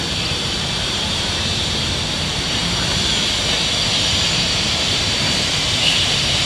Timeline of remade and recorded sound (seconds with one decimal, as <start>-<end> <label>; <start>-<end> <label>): 0.0-2.6 remade; 2.6-4.0 recorded; 4.0-6.5 remade